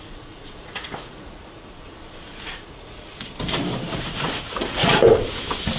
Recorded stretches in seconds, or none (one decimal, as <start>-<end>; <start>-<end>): 3.3-3.9; 5.0-5.8